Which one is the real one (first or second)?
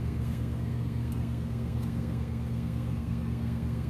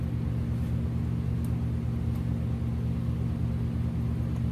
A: second